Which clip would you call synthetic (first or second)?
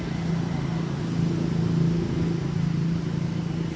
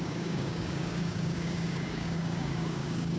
second